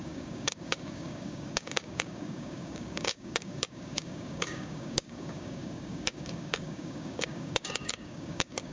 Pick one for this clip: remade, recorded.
remade